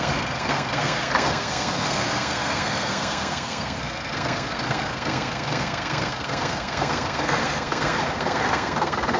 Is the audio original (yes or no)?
no